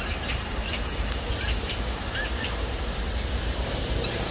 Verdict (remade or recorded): remade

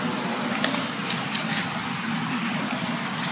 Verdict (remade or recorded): recorded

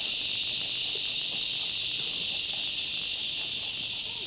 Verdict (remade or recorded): recorded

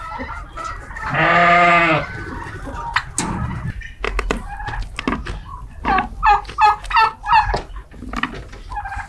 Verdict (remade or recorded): recorded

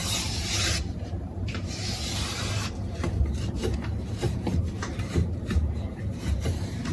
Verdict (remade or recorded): remade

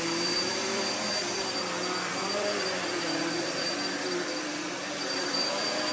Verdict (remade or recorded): remade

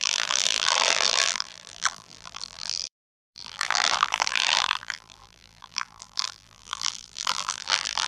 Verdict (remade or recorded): remade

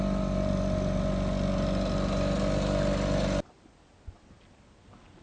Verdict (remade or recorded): recorded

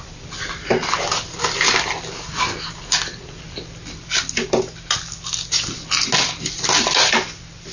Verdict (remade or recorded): recorded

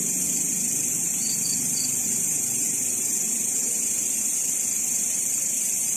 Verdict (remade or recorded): remade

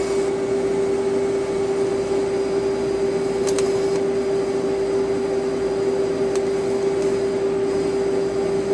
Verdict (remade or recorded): recorded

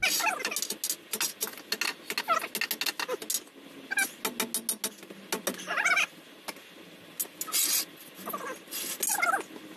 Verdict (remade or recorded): recorded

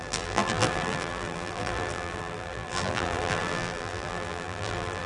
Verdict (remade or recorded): remade